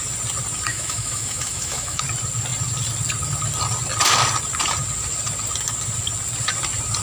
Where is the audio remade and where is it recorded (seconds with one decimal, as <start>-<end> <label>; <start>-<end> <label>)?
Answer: 0.0-0.7 recorded; 0.7-2.0 remade; 2.0-7.0 recorded